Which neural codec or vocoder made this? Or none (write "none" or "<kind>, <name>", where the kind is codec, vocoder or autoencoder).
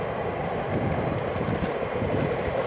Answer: none